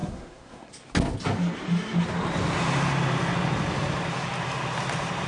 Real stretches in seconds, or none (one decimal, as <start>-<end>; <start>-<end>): 0.7-5.3

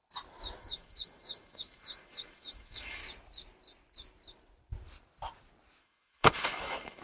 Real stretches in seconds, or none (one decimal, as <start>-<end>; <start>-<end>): 0.0-0.6; 3.0-5.8